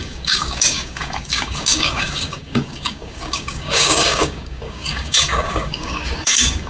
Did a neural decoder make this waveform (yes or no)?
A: yes